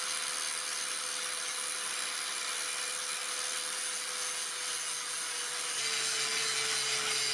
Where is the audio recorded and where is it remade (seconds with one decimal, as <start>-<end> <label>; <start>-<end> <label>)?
0.0-7.3 recorded